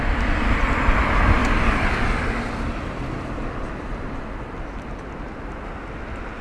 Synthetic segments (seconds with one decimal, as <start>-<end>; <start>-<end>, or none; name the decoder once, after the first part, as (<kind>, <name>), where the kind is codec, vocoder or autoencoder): none